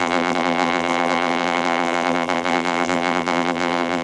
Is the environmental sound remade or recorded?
remade